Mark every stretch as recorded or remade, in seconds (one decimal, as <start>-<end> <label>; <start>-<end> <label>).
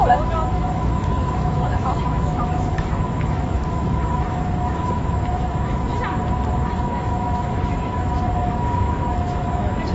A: 0.0-5.9 remade; 5.9-6.6 recorded; 6.6-9.9 remade